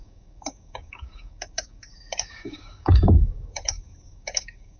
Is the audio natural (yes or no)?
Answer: no